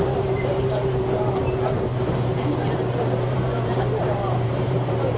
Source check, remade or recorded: remade